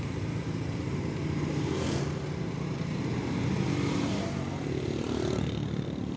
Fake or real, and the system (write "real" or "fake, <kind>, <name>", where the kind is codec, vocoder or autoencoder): fake, vocoder, BigVGAN v2